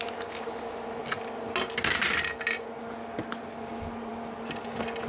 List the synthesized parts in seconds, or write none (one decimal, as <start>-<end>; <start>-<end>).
none